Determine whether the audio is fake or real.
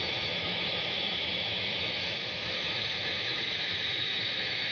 fake